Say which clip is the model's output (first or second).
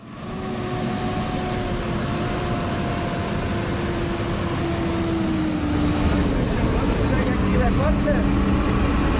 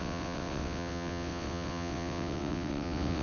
second